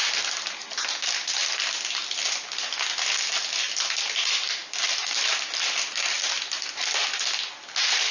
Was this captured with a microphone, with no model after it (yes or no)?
yes